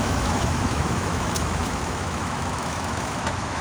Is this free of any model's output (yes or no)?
no